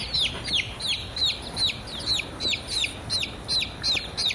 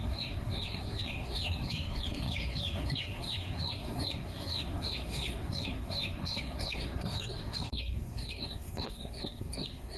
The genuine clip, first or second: first